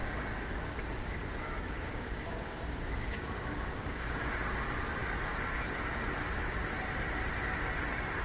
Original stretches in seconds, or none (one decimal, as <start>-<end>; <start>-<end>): 0.0-1.0; 4.4-8.2